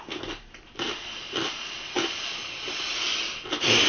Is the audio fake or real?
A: real